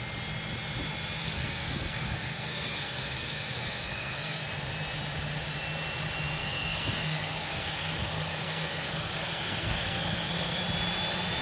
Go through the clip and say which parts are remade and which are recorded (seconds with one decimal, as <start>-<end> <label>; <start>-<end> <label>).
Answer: 0.0-1.2 recorded; 1.2-4.4 remade; 4.4-6.4 recorded; 6.4-10.6 remade; 10.6-11.4 recorded